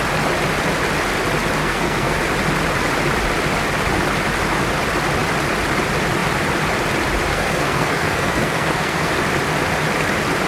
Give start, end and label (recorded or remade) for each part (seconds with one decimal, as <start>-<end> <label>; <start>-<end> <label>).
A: 0.0-1.6 recorded; 1.6-2.2 remade; 2.2-7.3 recorded; 7.3-9.1 remade; 9.1-10.5 recorded